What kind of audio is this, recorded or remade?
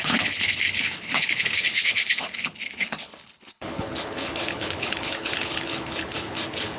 remade